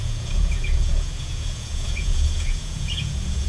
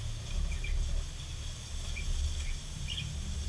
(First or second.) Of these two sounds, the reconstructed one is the first